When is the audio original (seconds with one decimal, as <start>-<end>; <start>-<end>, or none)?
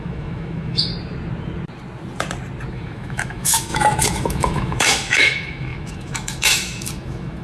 0.9-2.7